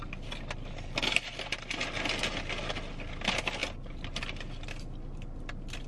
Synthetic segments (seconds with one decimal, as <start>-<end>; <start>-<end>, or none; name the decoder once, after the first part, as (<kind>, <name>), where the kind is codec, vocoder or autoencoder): none